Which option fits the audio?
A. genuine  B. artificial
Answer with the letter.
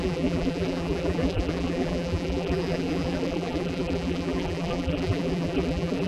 B